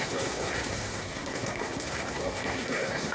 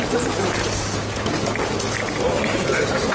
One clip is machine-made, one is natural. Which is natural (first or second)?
second